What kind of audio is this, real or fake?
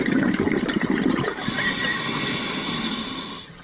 fake